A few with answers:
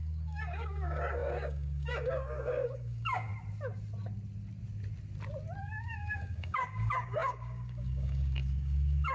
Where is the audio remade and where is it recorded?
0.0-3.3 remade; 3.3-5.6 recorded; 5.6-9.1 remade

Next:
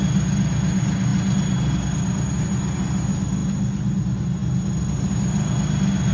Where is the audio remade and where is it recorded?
0.0-6.1 recorded

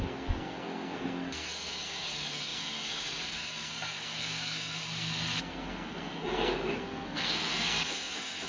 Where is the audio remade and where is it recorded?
0.0-8.5 remade